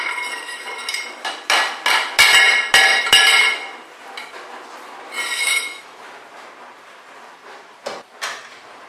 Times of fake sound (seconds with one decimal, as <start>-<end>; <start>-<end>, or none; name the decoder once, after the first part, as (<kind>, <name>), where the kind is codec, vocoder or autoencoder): 5.5-6.0 (autoencoder, DAC-VAE)